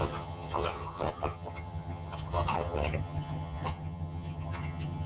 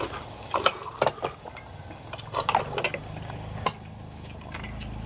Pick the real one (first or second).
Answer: second